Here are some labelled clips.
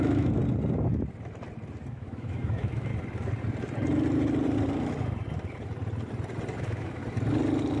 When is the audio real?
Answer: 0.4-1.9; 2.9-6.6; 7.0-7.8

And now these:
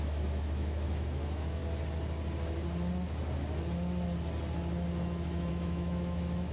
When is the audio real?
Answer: 1.6-5.5

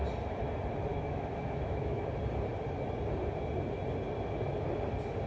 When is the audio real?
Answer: 0.0-0.9; 2.0-5.3

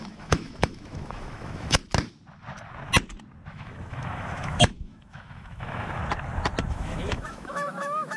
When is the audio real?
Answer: 1.8-3.5; 6.0-6.7

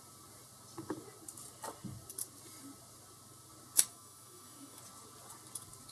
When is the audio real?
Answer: 0.0-3.9; 4.8-5.9